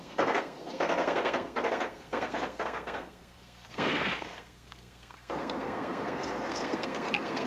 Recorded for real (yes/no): no